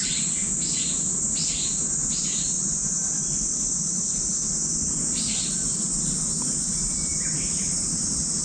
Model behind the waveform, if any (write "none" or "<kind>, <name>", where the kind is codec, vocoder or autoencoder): none